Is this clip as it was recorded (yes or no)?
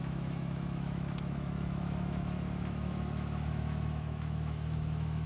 no